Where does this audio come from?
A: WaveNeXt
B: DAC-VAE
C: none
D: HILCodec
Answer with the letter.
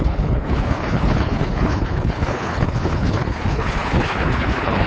D